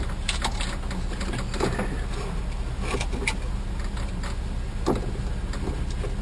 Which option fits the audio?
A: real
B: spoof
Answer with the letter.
A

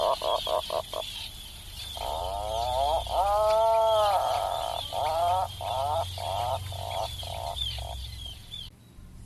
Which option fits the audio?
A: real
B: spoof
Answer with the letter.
A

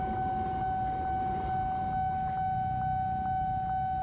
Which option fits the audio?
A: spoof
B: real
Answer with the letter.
B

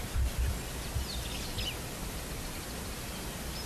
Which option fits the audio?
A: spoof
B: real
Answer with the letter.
B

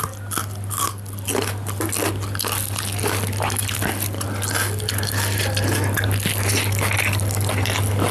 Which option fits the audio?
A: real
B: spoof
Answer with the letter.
A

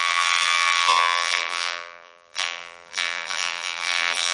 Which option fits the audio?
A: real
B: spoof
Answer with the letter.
B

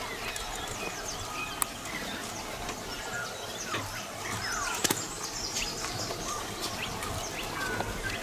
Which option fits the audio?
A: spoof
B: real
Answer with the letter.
B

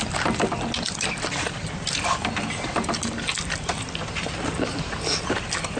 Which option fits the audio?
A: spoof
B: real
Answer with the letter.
B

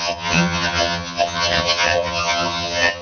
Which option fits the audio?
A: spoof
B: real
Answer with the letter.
A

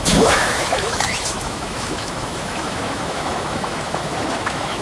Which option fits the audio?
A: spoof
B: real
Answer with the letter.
A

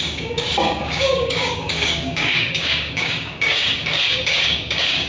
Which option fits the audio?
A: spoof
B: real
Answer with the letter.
A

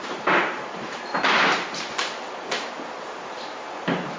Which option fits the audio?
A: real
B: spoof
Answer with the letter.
B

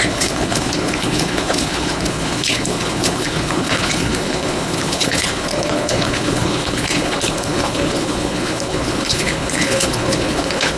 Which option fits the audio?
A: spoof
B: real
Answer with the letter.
A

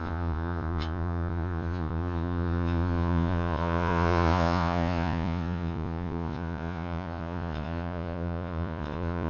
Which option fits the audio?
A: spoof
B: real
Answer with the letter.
A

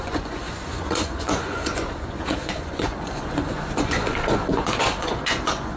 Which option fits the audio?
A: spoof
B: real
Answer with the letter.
A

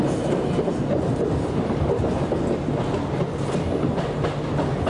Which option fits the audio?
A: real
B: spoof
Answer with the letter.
A